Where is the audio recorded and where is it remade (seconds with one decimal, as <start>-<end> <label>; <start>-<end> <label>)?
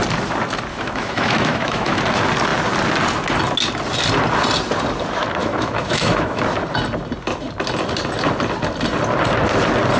0.0-0.7 recorded; 0.7-2.0 remade; 2.0-5.4 recorded; 5.4-6.4 remade; 6.4-10.0 recorded